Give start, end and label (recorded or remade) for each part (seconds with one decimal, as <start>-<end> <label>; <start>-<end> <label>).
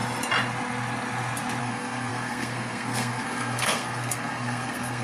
0.0-1.6 recorded; 1.6-5.0 remade